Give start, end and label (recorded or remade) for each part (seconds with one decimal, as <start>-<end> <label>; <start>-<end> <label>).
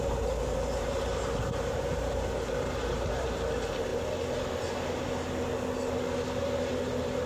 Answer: 0.0-3.9 remade; 3.9-6.4 recorded; 6.4-7.3 remade